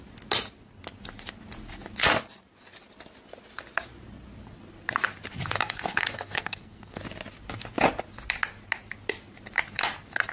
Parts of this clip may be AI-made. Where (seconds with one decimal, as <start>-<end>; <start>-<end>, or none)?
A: 5.6-7.0